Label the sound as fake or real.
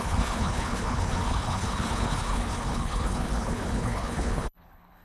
fake